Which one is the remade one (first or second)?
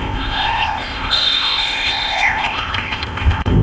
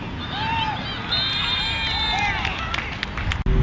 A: first